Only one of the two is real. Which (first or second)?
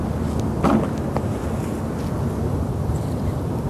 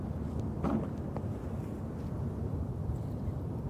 first